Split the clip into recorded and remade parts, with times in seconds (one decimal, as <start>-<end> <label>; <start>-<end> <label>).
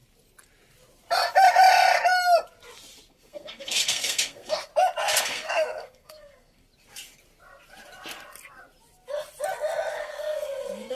0.0-3.1 recorded; 3.1-4.7 remade; 4.7-5.2 recorded; 5.2-6.6 remade; 6.6-9.9 recorded; 9.9-10.9 remade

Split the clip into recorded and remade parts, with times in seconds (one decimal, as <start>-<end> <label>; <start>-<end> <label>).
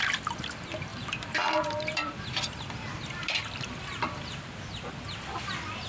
0.0-0.9 recorded; 0.9-4.4 remade; 4.4-5.9 recorded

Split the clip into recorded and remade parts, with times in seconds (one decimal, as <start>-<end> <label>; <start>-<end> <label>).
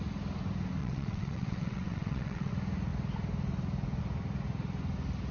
0.0-0.8 recorded; 0.8-2.5 remade; 2.5-5.3 recorded